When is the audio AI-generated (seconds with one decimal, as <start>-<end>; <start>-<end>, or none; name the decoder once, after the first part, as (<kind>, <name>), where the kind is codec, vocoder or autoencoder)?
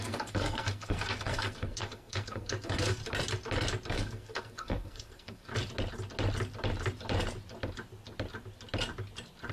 0.0-3.0 (codec, SNAC); 3.9-5.5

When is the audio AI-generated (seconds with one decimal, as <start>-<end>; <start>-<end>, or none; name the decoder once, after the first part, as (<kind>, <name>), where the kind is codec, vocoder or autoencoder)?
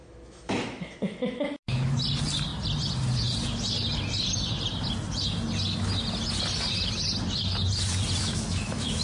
0.0-2.0 (autoencoder, DAC-VAE); 8.2-9.0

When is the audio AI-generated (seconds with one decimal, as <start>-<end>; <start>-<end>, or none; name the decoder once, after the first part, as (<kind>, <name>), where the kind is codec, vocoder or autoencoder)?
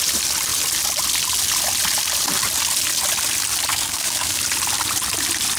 3.7-4.4 (codec, DAC)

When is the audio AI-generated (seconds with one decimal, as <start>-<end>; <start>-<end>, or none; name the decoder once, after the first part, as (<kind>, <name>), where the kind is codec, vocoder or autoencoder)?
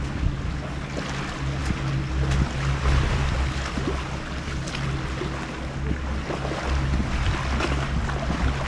none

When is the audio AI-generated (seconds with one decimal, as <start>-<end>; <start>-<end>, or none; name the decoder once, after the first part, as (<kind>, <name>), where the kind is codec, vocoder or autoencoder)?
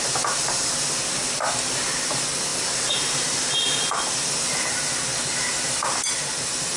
none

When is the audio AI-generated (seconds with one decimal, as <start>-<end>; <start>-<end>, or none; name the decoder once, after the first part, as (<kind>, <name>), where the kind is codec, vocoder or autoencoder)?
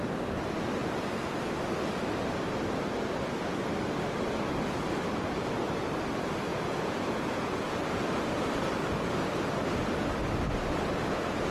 6.5-7.8 (vocoder, Vocos)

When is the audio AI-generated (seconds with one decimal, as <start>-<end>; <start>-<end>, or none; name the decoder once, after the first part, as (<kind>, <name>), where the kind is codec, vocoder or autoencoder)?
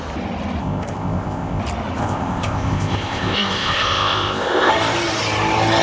0.6-1.6 (codec, ZipCodec); 2.0-4.7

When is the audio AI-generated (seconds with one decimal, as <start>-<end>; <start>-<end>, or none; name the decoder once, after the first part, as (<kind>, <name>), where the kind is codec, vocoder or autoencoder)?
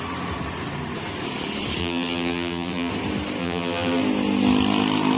1.8-2.9 (vocoder, BigVGAN v2); 3.4-4.0